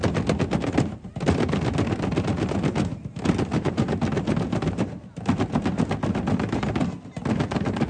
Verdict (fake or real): real